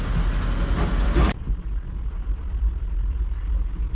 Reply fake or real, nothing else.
real